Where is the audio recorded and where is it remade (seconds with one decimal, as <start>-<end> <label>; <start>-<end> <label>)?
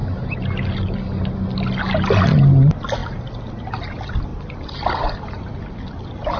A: 0.0-6.4 recorded